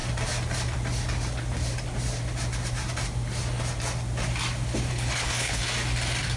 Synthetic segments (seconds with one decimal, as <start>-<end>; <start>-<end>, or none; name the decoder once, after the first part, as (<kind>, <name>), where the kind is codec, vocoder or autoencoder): 4.9-5.6 (codec, HILCodec)